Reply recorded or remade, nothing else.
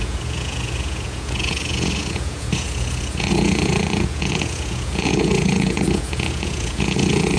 remade